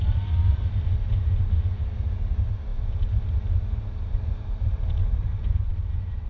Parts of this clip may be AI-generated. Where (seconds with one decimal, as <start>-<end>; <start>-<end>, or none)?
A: none